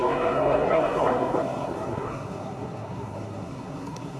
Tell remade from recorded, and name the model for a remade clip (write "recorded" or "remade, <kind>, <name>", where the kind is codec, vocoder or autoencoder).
remade, codec, SNAC